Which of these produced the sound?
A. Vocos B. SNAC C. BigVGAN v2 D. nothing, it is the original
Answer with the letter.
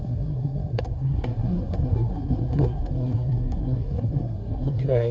B